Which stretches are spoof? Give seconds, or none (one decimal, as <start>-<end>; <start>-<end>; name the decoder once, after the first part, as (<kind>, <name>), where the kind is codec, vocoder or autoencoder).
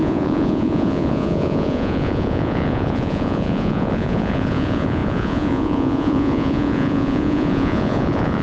0.0-8.4 (vocoder, Vocos)